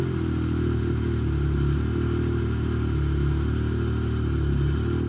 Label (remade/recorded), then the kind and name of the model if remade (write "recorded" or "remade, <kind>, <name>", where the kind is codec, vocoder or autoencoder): recorded